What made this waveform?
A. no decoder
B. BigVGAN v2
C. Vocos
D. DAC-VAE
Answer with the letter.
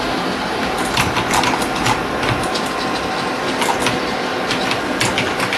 A